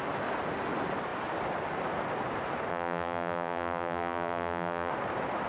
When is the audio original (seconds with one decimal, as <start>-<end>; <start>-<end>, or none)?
0.0-2.7; 4.9-5.5